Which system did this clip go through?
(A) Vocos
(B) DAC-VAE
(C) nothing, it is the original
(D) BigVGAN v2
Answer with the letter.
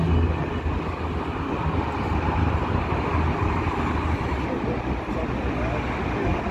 C